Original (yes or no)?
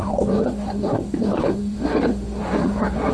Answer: no